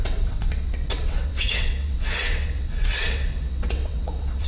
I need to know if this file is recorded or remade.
remade